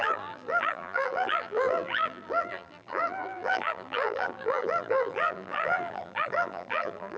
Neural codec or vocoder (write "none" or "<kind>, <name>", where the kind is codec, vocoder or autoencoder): vocoder, BigVGAN v2